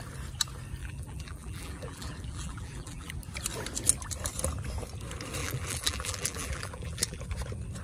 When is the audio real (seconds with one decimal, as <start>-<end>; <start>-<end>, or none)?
0.0-0.8; 3.1-5.4; 7.2-7.8